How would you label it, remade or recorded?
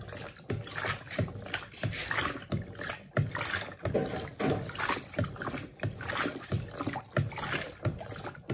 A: recorded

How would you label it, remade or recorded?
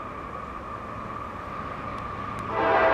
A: recorded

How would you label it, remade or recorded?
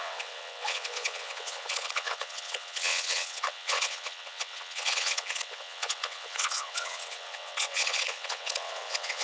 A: remade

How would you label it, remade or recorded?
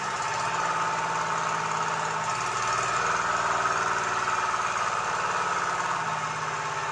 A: recorded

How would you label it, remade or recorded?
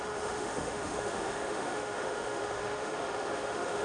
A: remade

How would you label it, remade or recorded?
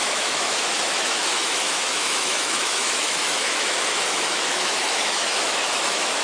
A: remade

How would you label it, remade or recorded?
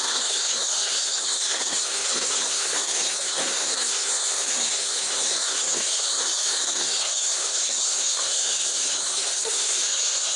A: remade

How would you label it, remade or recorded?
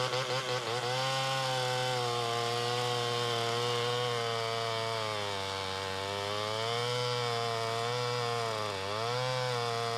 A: recorded